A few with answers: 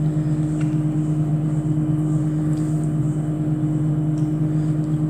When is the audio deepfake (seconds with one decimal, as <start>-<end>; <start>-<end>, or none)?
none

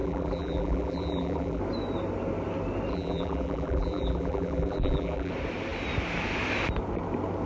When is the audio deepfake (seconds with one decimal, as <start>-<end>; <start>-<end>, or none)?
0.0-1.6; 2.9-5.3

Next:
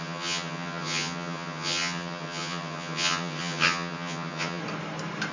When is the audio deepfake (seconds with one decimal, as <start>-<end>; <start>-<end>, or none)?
0.0-4.6